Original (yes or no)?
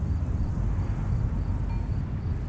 yes